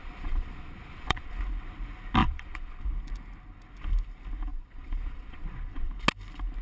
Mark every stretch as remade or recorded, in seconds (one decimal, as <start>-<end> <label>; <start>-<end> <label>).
0.0-1.4 remade; 1.4-2.2 recorded; 2.2-2.8 remade; 2.8-4.5 recorded; 4.5-5.9 remade; 5.9-6.6 recorded